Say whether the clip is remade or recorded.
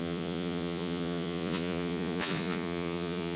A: remade